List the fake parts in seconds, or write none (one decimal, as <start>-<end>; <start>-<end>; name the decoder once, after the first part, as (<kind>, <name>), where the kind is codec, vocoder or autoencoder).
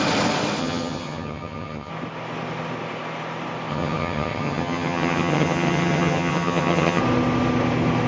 0.6-1.9 (vocoder, HiFi-GAN); 3.7-7.0